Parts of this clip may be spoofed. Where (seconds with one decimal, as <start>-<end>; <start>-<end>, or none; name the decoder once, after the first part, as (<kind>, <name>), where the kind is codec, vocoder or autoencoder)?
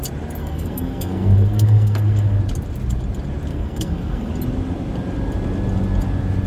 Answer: 0.4-2.4 (codec, SNAC); 3.5-4.3